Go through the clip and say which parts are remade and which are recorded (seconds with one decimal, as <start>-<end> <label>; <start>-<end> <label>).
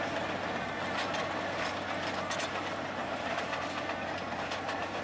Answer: 0.0-3.0 recorded; 3.0-3.6 remade; 3.6-5.0 recorded